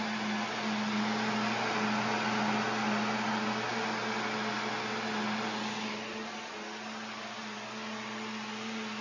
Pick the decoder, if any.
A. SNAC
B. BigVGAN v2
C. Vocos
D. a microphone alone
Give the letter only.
D